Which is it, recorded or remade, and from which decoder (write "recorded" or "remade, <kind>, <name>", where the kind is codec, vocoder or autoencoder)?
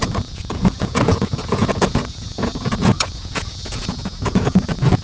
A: remade, vocoder, Vocos